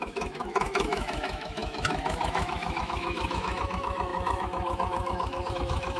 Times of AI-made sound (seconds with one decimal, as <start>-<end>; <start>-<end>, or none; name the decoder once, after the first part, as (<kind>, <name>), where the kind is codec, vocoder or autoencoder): 0.0-6.0 (autoencoder, DAC-VAE)